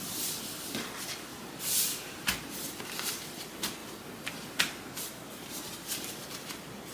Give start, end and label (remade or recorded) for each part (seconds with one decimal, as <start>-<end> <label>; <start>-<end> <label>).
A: 0.0-1.3 recorded; 1.3-2.2 remade; 2.2-3.8 recorded; 3.8-4.3 remade; 4.3-6.9 recorded